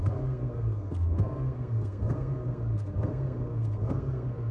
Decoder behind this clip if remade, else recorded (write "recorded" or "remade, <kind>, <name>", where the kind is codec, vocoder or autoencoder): remade, codec, SNAC